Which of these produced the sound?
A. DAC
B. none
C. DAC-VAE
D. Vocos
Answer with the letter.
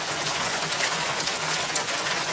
D